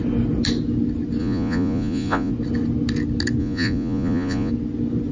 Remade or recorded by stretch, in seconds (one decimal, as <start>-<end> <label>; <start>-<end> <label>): 0.0-1.2 recorded; 1.2-2.3 remade; 2.3-3.4 recorded; 3.4-4.5 remade; 4.5-5.1 recorded